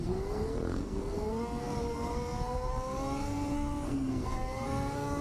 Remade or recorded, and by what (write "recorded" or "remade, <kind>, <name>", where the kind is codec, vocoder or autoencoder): remade, codec, SNAC